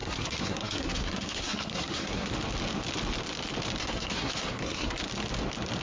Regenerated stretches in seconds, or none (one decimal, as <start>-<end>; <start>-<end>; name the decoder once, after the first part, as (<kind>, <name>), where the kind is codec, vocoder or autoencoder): 0.0-2.3 (codec, SNAC); 3.8-5.0